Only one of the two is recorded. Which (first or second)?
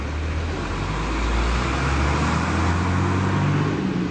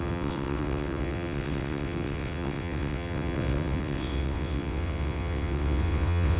first